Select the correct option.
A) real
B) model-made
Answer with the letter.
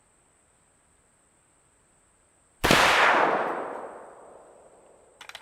A